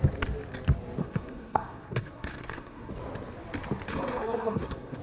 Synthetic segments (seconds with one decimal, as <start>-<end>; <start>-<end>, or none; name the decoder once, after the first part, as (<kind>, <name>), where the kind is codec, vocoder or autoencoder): 1.0-2.9 (codec, SNAC); 3.9-5.0